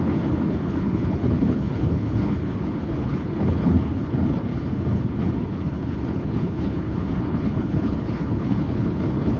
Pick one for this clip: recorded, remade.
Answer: remade